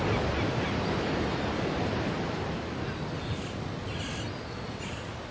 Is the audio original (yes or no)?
yes